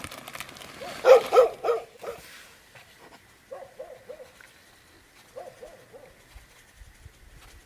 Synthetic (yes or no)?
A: no